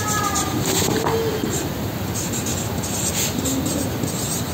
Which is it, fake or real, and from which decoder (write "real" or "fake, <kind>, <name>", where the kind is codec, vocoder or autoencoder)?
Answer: real